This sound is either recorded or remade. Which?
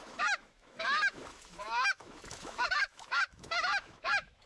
remade